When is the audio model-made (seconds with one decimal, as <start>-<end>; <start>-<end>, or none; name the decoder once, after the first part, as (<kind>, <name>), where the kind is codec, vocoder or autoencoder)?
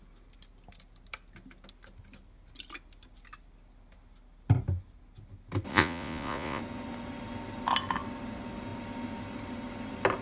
5.7-6.6 (vocoder, Vocos)